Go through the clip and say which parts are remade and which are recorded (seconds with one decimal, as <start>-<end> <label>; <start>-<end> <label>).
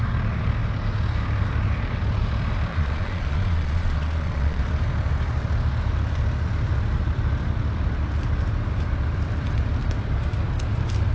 0.0-2.7 recorded; 2.7-4.6 remade; 4.6-11.1 recorded